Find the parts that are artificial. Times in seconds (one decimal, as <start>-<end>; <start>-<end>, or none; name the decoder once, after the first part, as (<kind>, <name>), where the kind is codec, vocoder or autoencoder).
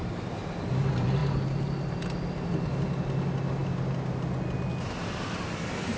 none